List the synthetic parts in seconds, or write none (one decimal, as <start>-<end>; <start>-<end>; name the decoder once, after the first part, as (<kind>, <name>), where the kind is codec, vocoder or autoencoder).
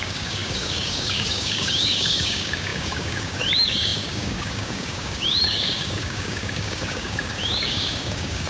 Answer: 0.0-8.5 (codec, DAC)